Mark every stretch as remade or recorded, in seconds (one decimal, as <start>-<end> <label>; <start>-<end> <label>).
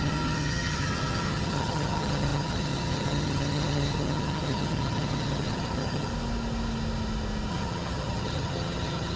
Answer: 0.0-6.1 remade; 6.1-7.5 recorded; 7.5-9.2 remade